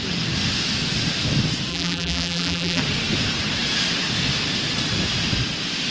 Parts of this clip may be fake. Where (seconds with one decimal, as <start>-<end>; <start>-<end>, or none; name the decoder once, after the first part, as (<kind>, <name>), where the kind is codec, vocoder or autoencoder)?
1.7-2.8 (vocoder, BigVGAN v2)